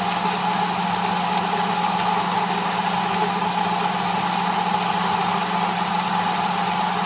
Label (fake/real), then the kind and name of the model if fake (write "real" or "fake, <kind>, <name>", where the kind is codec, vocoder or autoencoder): real